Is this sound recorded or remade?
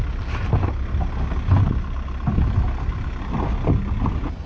recorded